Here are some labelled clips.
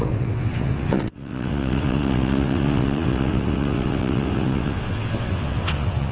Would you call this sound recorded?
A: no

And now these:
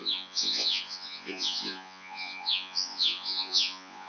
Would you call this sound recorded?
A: no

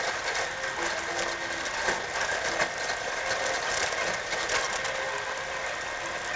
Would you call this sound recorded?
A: yes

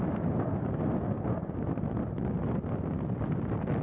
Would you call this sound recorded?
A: yes